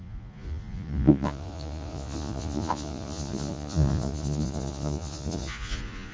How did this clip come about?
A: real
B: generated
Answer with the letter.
B